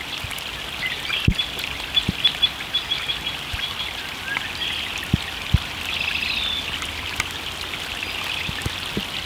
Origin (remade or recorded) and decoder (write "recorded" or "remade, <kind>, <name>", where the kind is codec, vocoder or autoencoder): recorded